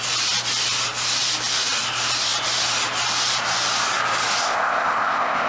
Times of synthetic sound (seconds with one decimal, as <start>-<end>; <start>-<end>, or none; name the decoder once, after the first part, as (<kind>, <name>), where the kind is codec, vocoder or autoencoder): 4.4-5.5 (codec, ZipCodec)